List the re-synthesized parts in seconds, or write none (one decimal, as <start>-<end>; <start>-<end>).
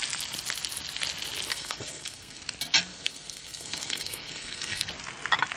1.5-2.4; 2.9-4.9